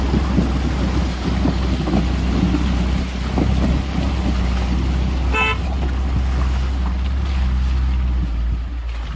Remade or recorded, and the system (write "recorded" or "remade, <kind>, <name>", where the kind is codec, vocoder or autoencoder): recorded